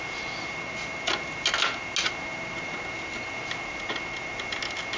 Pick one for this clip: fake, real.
real